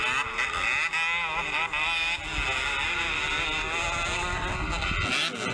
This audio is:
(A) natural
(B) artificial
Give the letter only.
A